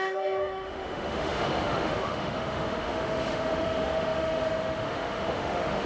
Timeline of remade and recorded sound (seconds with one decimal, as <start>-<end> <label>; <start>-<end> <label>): 0.0-5.9 remade